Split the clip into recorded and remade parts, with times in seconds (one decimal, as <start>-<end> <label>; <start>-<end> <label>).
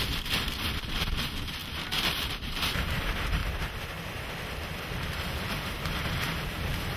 0.0-3.4 remade; 3.4-4.9 recorded; 4.9-7.0 remade